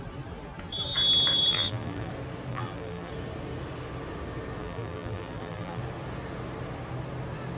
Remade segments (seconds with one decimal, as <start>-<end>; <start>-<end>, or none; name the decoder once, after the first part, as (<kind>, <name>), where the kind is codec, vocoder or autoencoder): 1.5-2.1 (vocoder, BigVGAN v2); 2.5-3.1; 4.6-5.8